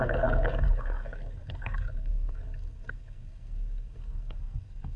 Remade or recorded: remade